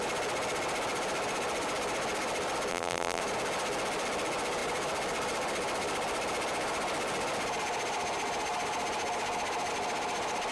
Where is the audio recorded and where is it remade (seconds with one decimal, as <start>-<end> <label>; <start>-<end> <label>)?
0.0-2.7 recorded; 2.7-3.2 remade; 3.2-10.5 recorded